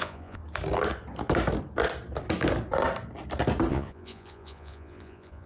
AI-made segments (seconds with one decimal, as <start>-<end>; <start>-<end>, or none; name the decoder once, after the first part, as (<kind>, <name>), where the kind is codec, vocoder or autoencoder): 0.0-0.4 (vocoder, Vocos); 3.7-5.5